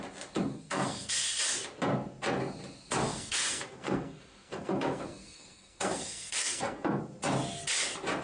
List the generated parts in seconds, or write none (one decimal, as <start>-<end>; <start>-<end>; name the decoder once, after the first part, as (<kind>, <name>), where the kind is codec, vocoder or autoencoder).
0.5-1.1 (codec, SNAC); 3.1-7.0